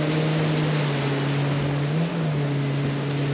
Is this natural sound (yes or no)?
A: yes